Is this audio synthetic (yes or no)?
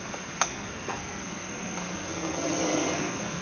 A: yes